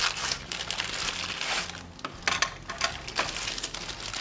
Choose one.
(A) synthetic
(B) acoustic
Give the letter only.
B